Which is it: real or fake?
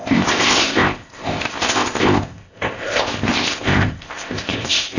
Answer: fake